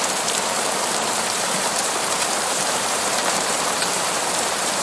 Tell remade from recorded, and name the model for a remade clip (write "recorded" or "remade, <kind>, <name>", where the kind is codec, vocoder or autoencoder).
remade, vocoder, BigVGAN v2